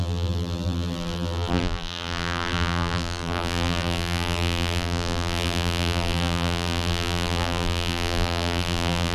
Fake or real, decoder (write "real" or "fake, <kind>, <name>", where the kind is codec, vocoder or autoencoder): fake, vocoder, BigVGAN v2